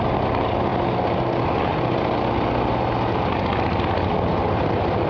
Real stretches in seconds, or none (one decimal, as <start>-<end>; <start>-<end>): 0.0-5.1